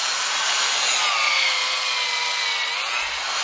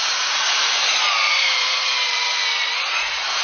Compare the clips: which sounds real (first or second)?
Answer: first